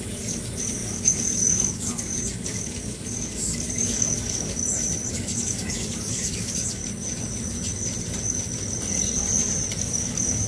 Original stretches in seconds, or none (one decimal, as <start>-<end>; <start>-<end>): 4.6-5.1; 6.8-9.8